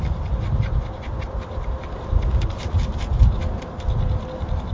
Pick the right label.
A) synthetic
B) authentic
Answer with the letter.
B